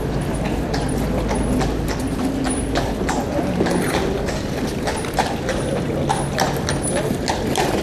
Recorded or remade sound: recorded